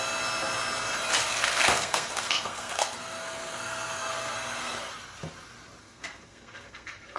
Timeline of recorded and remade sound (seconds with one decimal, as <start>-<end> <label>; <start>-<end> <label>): 0.0-1.2 recorded; 1.2-4.9 remade; 4.9-5.8 recorded; 5.8-7.2 remade